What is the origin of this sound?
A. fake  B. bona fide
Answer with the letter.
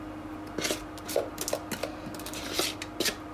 B